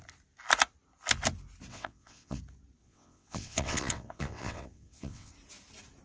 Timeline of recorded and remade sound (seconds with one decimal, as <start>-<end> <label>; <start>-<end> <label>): 0.0-1.7 recorded; 1.7-2.4 remade; 2.4-2.8 recorded; 2.8-5.3 remade; 5.3-6.0 recorded